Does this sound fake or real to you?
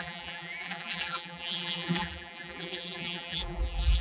fake